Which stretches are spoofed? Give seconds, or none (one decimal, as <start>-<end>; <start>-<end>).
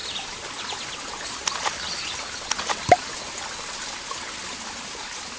none